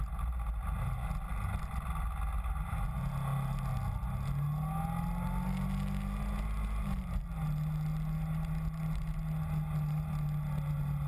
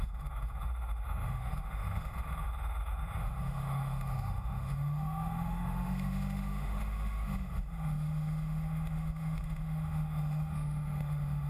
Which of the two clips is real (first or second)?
first